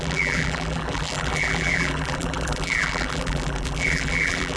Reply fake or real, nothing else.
fake